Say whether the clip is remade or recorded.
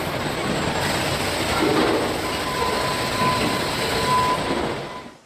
recorded